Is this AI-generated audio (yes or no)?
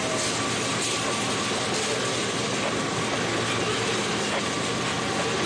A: no